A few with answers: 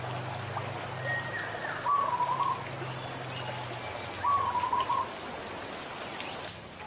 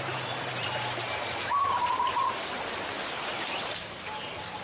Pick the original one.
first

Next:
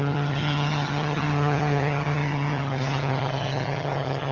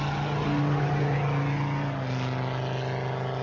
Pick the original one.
second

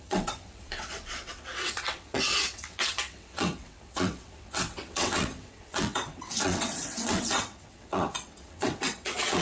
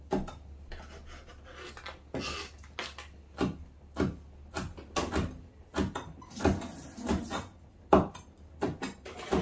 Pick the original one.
second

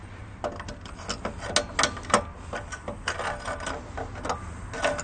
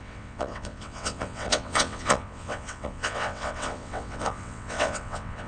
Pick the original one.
first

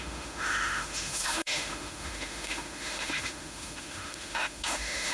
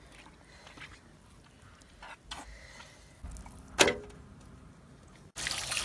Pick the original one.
second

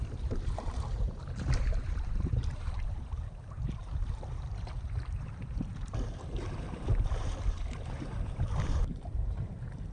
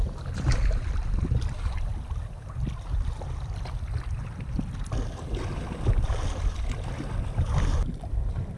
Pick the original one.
second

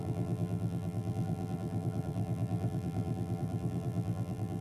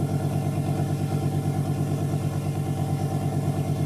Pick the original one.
second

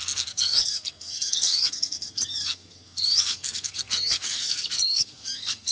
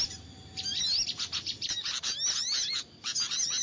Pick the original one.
second